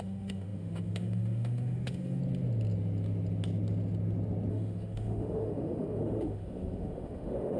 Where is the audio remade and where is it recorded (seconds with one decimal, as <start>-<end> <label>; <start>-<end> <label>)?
0.0-2.2 remade; 2.2-4.5 recorded; 4.5-7.6 remade

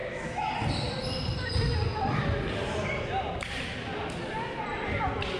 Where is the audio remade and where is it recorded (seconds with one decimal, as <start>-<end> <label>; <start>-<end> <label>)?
0.0-0.5 remade; 0.5-5.4 recorded

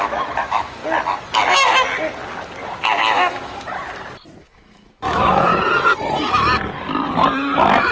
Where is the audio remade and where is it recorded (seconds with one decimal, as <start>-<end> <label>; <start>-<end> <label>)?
0.0-0.8 remade; 0.8-3.0 recorded; 3.0-3.7 remade; 3.7-4.4 recorded; 4.4-5.5 remade; 5.5-7.9 recorded